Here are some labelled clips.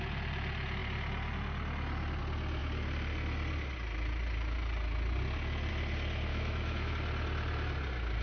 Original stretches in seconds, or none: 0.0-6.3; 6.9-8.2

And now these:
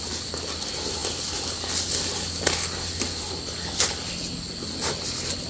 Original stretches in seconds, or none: 0.0-5.5